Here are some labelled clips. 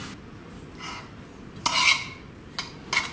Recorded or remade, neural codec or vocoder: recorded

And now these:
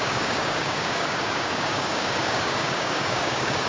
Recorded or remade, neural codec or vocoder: remade, codec, DAC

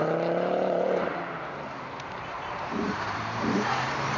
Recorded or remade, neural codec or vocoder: remade, vocoder, BigVGAN v2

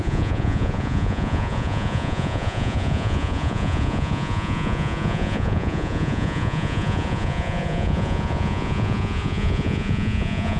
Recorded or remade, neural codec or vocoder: remade, vocoder, Vocos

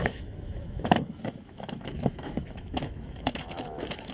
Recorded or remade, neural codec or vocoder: remade, autoencoder, DAC-VAE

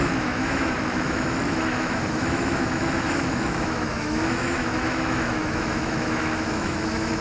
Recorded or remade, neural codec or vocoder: remade, autoencoder, DAC-VAE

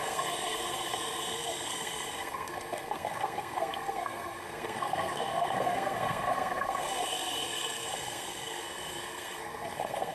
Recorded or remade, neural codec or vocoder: remade, codec, SNAC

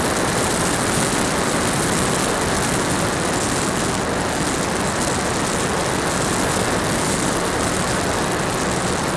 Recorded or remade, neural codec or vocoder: recorded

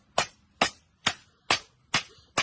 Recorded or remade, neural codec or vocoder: recorded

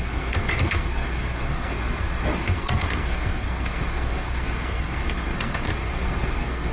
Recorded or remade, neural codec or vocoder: remade, codec, SNAC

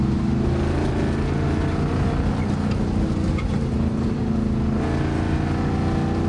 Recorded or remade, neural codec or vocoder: recorded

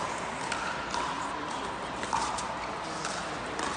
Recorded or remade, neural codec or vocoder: recorded